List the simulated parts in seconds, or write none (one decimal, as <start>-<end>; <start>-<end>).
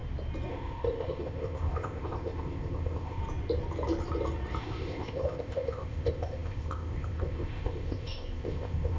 0.5-3.2; 4.6-9.0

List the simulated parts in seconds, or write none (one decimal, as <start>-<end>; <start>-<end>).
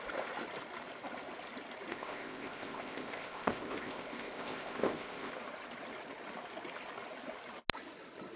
1.9-5.3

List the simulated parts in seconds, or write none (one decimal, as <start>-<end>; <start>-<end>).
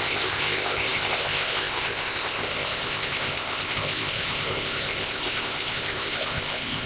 0.0-6.9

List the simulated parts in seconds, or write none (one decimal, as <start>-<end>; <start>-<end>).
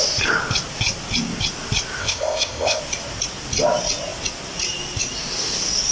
2.0-2.8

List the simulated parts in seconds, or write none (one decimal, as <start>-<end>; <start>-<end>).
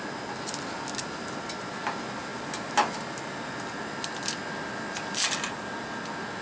none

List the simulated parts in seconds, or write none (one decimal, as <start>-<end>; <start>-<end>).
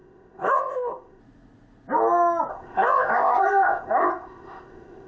0.0-1.2; 2.5-5.1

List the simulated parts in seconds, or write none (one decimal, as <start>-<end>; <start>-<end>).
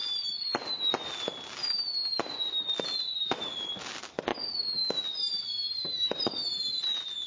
none